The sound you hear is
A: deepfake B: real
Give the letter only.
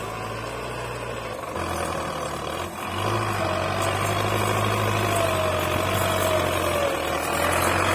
B